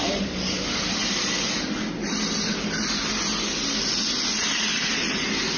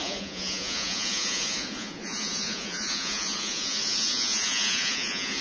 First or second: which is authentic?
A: first